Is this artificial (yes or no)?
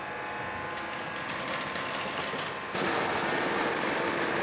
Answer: no